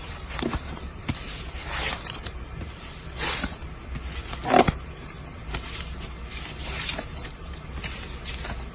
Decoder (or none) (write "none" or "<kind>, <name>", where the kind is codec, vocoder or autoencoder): vocoder, BigVGAN v2